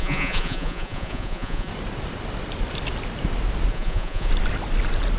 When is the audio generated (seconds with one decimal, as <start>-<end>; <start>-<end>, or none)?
0.0-1.7; 3.7-4.3